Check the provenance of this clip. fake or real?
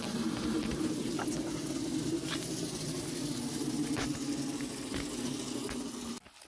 real